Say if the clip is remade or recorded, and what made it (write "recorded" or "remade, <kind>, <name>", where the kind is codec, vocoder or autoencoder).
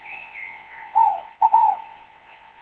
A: remade, vocoder, WaveNeXt